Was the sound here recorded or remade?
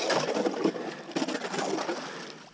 recorded